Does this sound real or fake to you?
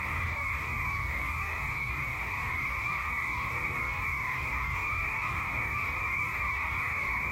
fake